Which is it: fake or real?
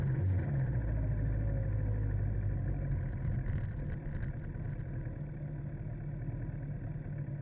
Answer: real